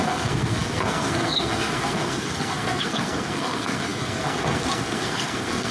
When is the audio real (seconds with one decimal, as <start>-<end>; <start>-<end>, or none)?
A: none